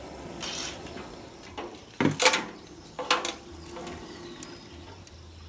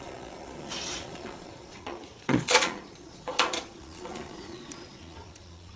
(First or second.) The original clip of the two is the first